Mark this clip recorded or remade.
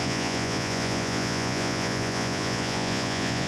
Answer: remade